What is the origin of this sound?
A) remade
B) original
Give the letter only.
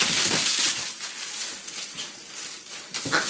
B